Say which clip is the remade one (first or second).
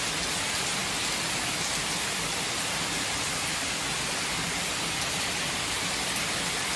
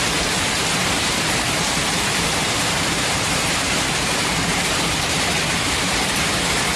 second